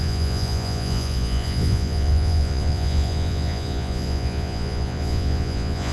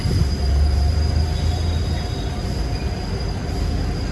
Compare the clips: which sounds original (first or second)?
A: second